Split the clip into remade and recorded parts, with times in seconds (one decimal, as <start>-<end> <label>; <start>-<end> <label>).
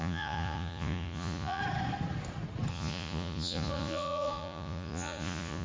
0.0-1.6 remade; 1.6-2.7 recorded; 2.7-5.6 remade